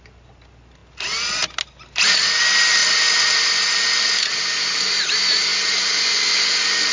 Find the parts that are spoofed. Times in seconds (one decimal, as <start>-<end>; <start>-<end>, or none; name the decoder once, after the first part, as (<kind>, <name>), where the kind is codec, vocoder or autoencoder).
none

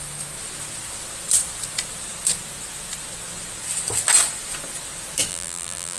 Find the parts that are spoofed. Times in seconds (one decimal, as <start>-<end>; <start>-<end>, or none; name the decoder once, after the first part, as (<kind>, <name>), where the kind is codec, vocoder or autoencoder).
5.3-6.0 (vocoder, BigVGAN v2)